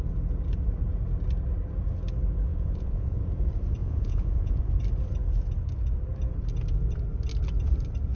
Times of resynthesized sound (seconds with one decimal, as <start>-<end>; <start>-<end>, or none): 2.5-3.2; 3.8-4.6